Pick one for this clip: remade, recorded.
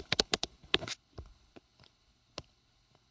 remade